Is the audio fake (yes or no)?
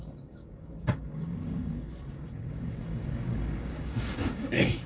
yes